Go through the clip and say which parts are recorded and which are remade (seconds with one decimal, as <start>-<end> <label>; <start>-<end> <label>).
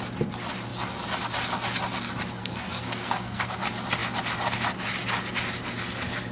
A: 0.0-2.4 recorded; 2.4-3.6 remade; 3.6-6.3 recorded